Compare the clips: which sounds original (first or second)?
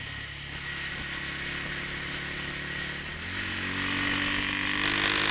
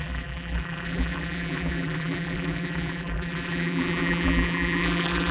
first